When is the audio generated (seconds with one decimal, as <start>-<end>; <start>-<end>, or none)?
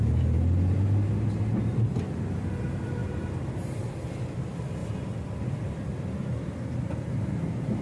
none